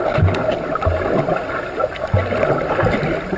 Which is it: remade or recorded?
recorded